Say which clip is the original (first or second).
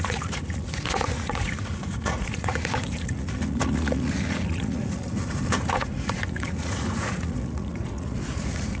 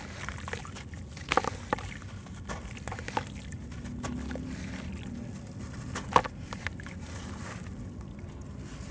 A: second